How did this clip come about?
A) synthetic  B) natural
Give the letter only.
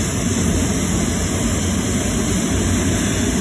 B